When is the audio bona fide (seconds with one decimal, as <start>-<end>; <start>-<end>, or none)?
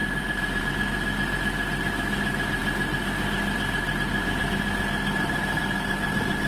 0.6-6.5